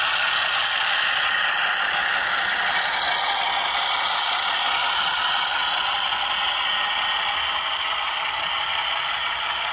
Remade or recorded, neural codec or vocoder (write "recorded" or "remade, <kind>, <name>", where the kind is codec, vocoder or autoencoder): recorded